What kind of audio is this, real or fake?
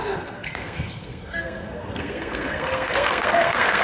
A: fake